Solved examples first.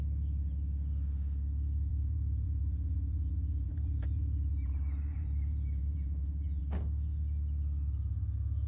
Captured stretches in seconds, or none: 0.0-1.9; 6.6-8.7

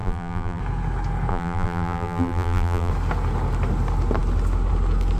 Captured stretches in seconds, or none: 0.6-1.3; 2.9-5.2

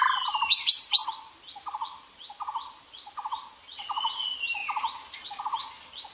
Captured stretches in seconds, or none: 0.0-6.1

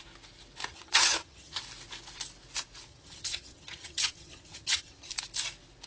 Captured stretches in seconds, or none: 0.0-0.7; 1.6-2.9; 5.1-5.9

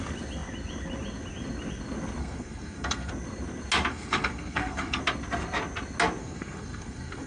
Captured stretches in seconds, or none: 0.0-2.2; 3.1-3.9; 5.0-6.2